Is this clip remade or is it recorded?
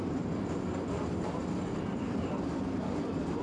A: recorded